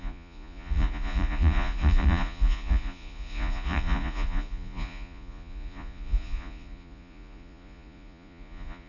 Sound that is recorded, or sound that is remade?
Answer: remade